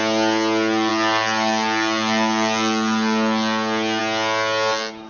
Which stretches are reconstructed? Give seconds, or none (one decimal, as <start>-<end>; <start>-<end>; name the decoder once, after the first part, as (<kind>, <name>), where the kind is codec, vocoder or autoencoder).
none